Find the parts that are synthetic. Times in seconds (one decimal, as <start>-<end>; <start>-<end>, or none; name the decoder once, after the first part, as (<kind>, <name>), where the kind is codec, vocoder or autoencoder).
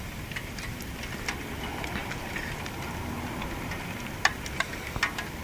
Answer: none